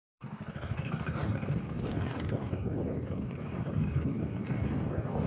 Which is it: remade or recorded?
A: remade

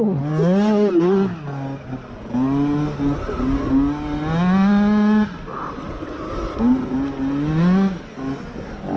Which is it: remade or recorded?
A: recorded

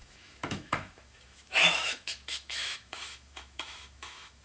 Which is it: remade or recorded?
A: remade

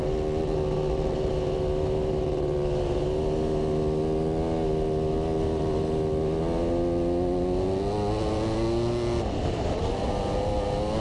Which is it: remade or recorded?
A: recorded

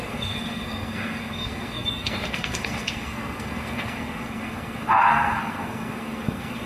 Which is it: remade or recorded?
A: remade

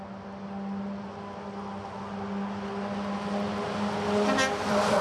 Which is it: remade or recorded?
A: recorded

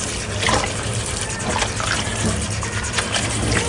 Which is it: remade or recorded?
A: recorded